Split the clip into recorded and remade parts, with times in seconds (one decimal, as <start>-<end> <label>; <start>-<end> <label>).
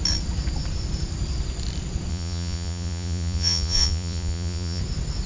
0.0-2.1 recorded; 2.1-4.8 remade; 4.8-5.3 recorded